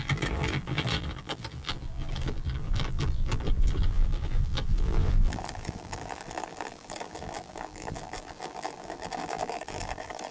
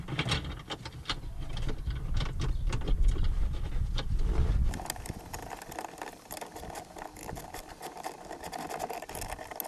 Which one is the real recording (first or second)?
second